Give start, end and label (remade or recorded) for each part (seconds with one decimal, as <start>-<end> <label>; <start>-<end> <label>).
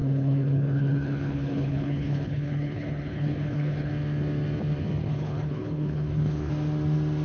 0.0-3.9 remade; 3.9-5.0 recorded; 5.0-6.5 remade; 6.5-7.2 recorded